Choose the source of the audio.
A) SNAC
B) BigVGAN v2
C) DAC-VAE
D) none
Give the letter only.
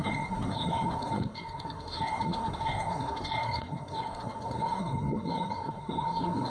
A